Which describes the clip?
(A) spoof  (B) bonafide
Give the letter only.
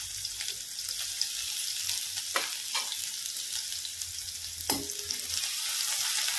B